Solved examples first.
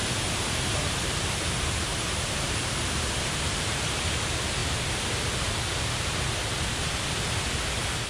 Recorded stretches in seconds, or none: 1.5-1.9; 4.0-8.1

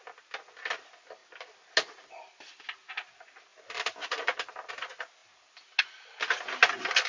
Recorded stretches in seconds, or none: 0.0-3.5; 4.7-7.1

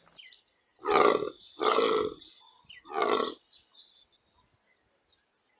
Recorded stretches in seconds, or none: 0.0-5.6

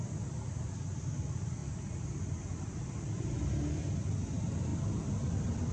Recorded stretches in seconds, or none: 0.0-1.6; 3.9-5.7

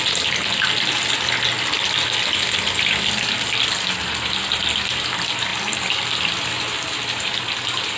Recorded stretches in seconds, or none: 0.0-5.5

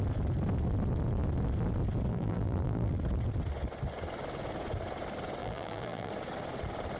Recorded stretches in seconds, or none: 0.0-2.1; 3.0-5.4; 6.1-7.0

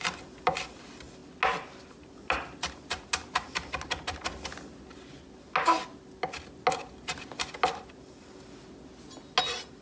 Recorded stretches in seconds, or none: 0.0-9.8